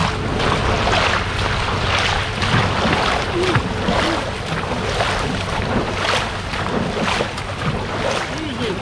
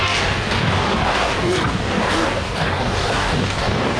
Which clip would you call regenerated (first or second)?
second